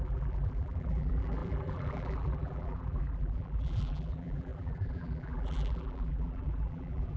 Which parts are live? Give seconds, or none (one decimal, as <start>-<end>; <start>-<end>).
none